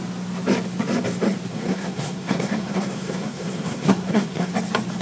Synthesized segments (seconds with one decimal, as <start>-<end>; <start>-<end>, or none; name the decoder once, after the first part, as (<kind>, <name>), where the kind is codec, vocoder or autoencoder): 1.5-4.5 (codec, SNAC)